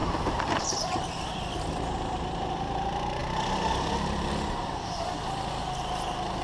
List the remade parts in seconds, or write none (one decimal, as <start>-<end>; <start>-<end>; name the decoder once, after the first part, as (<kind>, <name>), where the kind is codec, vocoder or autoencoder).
0.0-0.6 (vocoder, BigVGAN v2)